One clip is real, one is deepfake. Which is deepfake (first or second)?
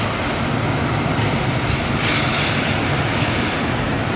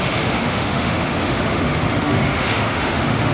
second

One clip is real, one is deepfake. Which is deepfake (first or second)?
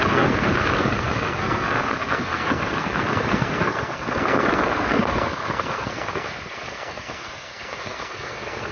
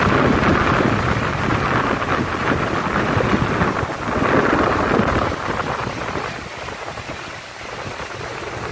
first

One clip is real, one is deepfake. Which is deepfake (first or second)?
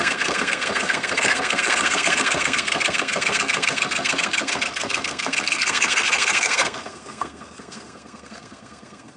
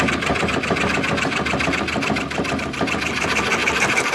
first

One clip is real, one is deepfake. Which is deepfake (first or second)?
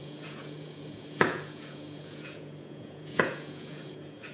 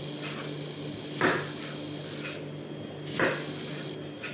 first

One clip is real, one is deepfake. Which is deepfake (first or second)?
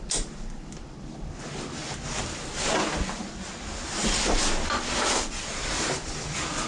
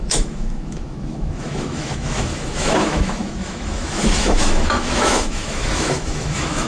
second